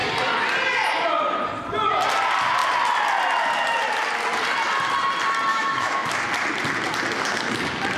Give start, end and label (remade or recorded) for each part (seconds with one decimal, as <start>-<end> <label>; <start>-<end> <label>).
0.0-5.5 recorded; 5.5-6.2 remade; 6.2-8.0 recorded